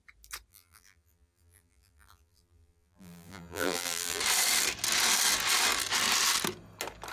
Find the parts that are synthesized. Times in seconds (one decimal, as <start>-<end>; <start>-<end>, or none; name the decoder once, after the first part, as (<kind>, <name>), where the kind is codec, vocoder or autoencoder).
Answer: 0.5-4.2 (vocoder, BigVGAN v2)